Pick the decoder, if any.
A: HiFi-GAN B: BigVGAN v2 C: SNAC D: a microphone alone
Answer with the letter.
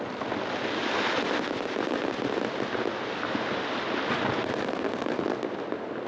D